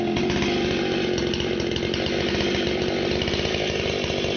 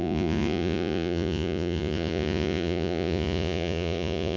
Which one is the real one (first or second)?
first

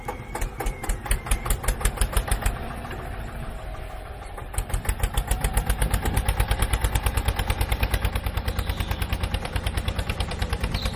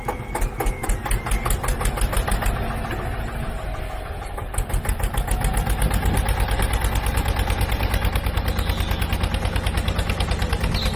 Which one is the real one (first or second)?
second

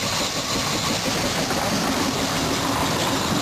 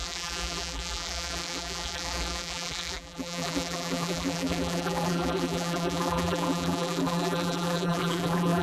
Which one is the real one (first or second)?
first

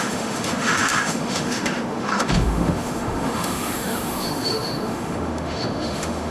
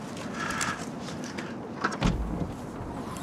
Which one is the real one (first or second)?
second